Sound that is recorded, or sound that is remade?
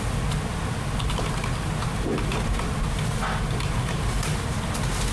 recorded